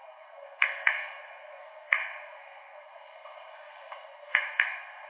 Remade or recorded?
remade